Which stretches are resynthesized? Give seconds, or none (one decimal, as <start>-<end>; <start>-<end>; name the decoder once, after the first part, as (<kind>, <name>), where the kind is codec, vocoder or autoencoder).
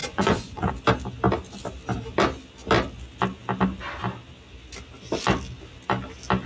0.0-0.7 (vocoder, Vocos)